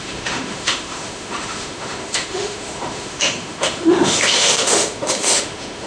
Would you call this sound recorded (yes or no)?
no